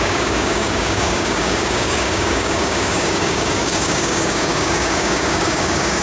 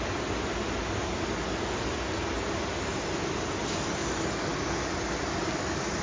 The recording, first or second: second